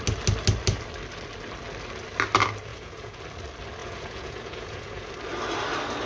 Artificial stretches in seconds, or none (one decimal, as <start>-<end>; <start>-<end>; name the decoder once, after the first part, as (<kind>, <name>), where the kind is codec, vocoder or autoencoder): 2.7-3.2 (vocoder, Vocos); 3.8-5.1